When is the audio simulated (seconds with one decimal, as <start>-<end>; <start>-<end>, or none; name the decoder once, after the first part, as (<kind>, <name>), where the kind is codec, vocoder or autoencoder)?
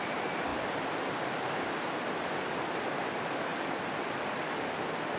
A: none